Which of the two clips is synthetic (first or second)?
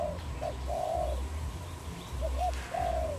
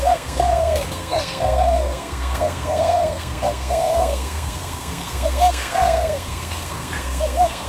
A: second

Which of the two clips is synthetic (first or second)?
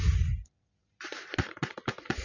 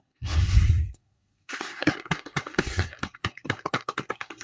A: second